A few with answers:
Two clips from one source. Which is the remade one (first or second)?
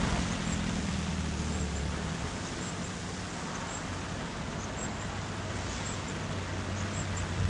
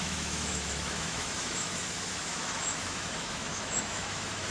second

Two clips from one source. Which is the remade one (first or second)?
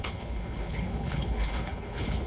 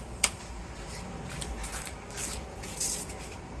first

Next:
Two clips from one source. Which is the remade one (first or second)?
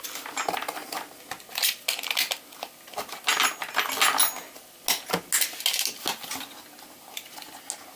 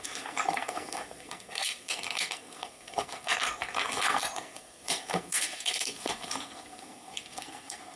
second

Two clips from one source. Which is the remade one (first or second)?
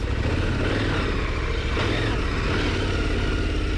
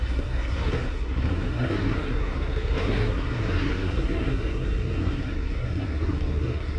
second